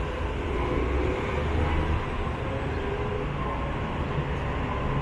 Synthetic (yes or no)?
no